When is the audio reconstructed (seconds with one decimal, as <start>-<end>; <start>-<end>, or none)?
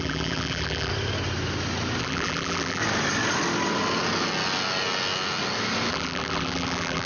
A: 0.0-0.9; 2.0-2.8; 5.9-7.1